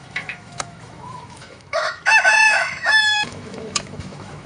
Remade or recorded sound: remade